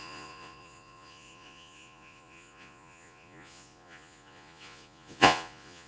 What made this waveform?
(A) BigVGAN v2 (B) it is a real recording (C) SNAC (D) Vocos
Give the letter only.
D